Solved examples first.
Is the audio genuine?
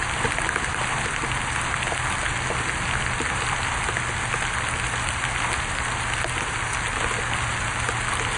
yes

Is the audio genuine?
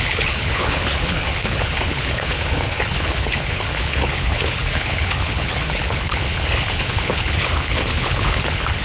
no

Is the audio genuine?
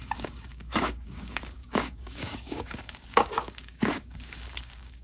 no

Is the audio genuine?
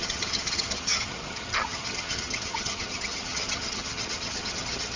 no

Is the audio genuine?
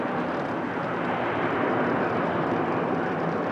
yes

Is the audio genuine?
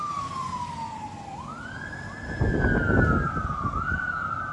yes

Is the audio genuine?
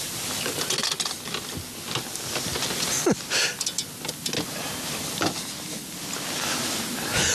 yes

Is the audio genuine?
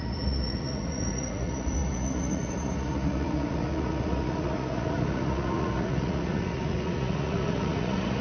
no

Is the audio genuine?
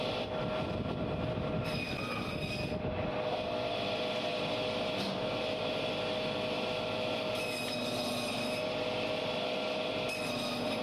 yes